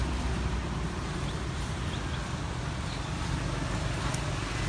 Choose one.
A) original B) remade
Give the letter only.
A